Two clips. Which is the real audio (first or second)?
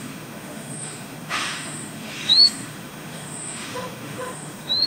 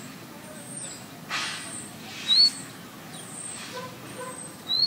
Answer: second